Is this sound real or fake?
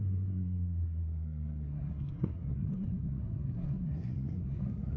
fake